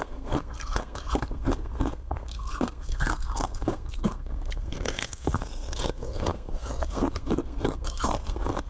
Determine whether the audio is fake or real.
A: fake